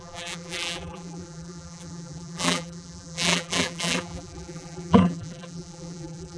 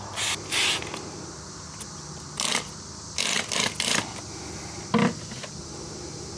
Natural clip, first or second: second